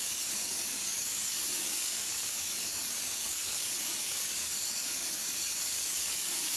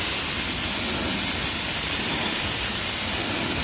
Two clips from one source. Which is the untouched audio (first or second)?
second